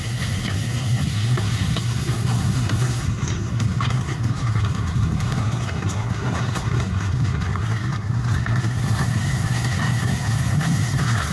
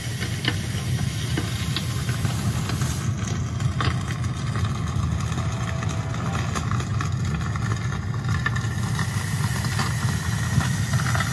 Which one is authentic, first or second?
second